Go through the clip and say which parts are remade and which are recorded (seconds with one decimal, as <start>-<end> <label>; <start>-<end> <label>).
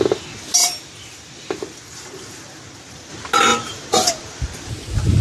0.0-0.6 recorded; 0.6-3.1 remade; 3.1-3.5 recorded; 3.5-4.7 remade; 4.7-5.2 recorded